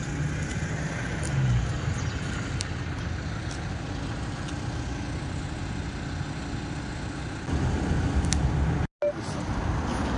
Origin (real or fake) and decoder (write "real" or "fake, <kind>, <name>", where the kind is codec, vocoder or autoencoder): real